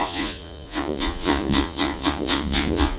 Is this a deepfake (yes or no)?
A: yes